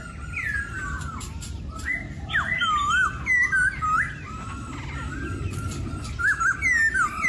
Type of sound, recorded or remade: recorded